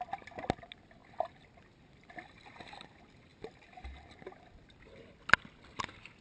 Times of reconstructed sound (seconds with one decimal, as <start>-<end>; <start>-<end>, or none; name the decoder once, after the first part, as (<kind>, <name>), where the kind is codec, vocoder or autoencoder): none